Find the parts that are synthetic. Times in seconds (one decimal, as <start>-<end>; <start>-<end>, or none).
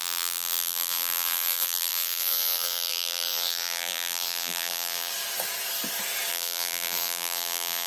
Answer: 0.0-5.1; 6.3-7.9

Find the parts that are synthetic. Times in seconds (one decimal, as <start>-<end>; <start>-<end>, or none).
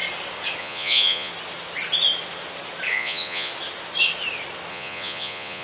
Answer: 0.6-1.3; 2.9-3.5; 4.7-5.6